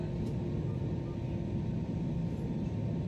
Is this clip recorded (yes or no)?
yes